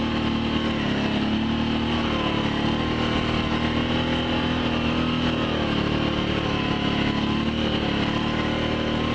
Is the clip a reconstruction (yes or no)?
no